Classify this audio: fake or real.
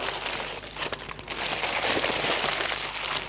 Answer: real